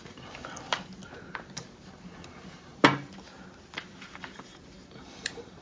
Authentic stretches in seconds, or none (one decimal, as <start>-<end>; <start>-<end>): 0.4-1.1; 2.7-4.2